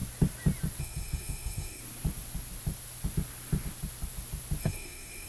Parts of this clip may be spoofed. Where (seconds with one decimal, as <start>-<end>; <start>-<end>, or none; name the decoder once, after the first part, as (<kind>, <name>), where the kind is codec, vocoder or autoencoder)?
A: 0.8-1.8 (codec, SNAC); 4.6-5.3

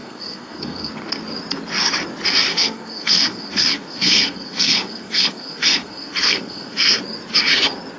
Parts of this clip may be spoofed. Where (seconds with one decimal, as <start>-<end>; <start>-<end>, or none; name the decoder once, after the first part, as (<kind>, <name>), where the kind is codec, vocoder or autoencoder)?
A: 0.0-0.9 (codec, SNAC); 2.5-7.0